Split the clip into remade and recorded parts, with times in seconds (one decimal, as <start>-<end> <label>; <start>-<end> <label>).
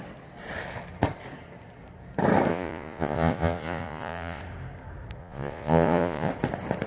0.0-2.5 recorded; 2.5-4.4 remade; 4.4-5.2 recorded; 5.2-6.3 remade; 6.3-6.9 recorded